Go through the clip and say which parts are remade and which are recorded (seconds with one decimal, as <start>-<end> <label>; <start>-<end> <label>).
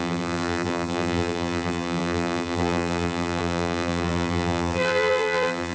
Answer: 0.0-5.7 remade